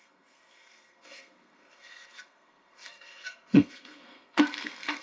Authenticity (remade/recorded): remade